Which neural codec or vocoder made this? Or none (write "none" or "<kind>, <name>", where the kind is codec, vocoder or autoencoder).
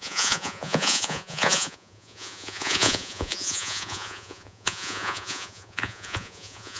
vocoder, Vocos